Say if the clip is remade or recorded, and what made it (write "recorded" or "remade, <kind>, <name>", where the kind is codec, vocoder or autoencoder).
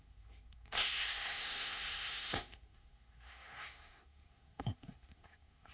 remade, codec, SNAC